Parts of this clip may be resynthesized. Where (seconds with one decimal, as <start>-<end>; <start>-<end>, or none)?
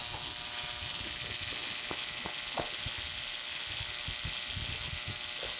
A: none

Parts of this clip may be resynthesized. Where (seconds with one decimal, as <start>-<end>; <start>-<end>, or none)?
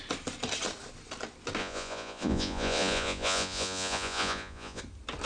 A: 1.6-4.8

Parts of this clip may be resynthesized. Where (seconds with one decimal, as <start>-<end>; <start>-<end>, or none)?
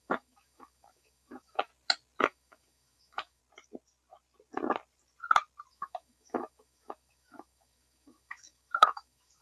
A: 0.0-1.7; 2.2-3.4; 5.7-9.4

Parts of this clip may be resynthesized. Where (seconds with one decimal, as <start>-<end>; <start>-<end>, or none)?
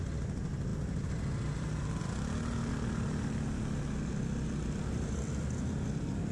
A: none